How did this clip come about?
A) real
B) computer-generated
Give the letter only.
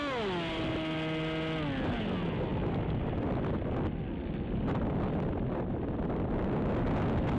A